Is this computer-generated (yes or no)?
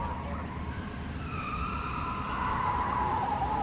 no